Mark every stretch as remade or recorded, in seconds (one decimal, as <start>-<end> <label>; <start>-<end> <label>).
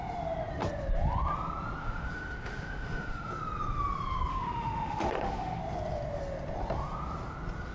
0.0-1.8 recorded; 1.8-3.3 remade; 3.3-4.3 recorded; 4.3-5.6 remade; 5.6-7.7 recorded